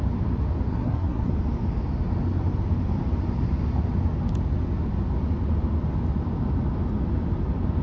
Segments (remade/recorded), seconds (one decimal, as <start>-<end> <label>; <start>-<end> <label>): 0.0-0.7 recorded; 0.7-1.3 remade; 1.3-7.8 recorded